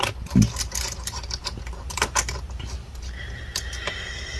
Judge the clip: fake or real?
real